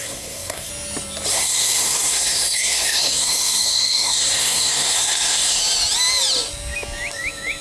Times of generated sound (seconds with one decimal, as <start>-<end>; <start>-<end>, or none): 0.0-0.7; 1.3-5.6